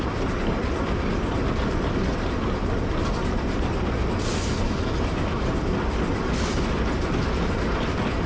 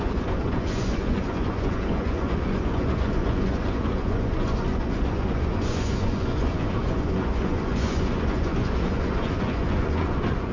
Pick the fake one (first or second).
second